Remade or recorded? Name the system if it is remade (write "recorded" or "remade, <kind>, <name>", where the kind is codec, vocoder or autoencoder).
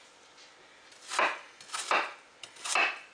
recorded